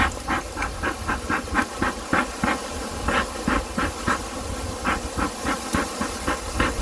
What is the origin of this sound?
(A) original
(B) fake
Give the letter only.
A